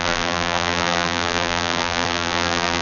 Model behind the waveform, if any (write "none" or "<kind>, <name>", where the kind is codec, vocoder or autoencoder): vocoder, BigVGAN v2